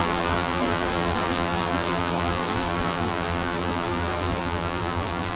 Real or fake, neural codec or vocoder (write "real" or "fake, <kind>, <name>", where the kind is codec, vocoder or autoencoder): fake, vocoder, BigVGAN v2